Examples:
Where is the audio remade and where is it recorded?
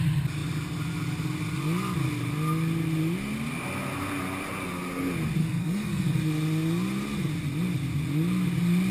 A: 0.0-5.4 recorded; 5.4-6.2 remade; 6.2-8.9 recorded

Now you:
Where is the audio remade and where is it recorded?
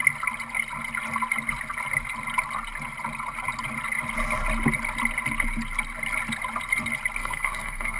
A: 0.0-7.2 recorded; 7.2-8.0 remade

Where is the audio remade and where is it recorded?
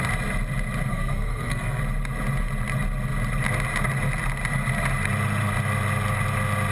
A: 0.0-0.9 recorded; 0.9-1.8 remade; 1.8-6.7 recorded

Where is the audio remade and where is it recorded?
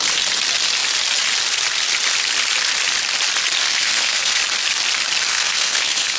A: 0.0-3.6 recorded; 3.6-4.4 remade; 4.4-5.3 recorded; 5.3-6.2 remade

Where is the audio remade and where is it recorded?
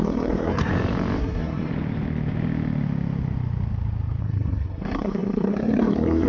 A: 0.0-0.7 remade; 0.7-1.2 recorded; 1.2-1.7 remade; 1.7-4.2 recorded; 4.2-6.3 remade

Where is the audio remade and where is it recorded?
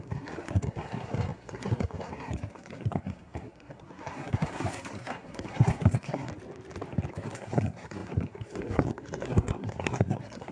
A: 0.0-6.3 remade; 6.3-7.1 recorded; 7.1-10.5 remade